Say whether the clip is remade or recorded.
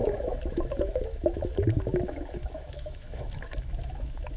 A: remade